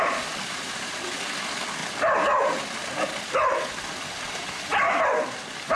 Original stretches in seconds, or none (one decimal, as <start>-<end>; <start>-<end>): 0.0-5.8